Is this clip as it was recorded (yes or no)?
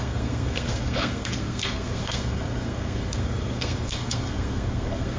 no